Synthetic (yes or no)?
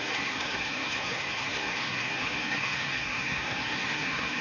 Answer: yes